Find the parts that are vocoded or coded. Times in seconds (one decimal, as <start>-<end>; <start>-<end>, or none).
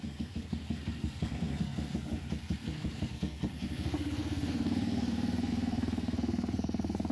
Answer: 0.0-7.1